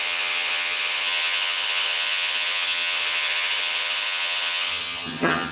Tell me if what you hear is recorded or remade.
remade